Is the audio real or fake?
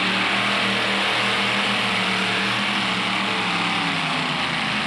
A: real